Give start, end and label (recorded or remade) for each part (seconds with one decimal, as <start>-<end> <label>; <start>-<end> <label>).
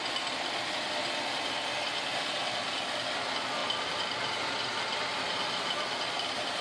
0.0-6.6 recorded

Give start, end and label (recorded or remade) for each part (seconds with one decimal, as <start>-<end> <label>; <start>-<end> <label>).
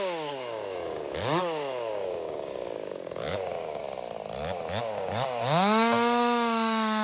0.0-3.8 remade; 3.8-4.8 recorded; 4.8-7.0 remade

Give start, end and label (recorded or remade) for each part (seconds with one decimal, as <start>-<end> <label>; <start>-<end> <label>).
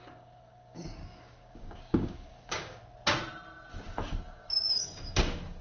0.0-2.8 remade; 2.8-3.7 recorded; 3.7-5.6 remade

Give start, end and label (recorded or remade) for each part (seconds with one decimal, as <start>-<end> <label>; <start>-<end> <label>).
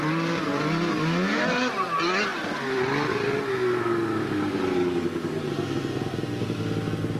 0.0-4.8 recorded; 4.8-5.5 remade; 5.5-7.2 recorded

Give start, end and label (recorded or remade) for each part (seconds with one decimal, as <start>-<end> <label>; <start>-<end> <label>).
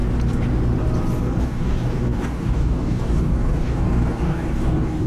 0.0-1.4 recorded; 1.4-5.1 remade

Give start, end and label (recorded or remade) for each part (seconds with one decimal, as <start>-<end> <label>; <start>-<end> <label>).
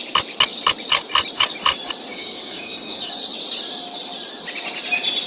0.0-2.1 recorded; 2.1-3.1 remade; 3.1-5.3 recorded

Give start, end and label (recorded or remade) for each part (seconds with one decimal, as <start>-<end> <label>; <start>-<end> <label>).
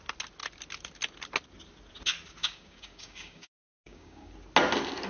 0.0-2.4 recorded; 2.4-4.3 remade; 4.3-5.1 recorded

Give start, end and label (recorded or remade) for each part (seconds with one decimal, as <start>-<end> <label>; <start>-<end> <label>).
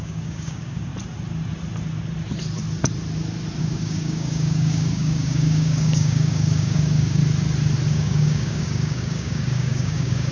0.0-0.9 remade; 0.9-3.6 recorded; 3.6-7.2 remade; 7.2-7.9 recorded; 7.9-10.3 remade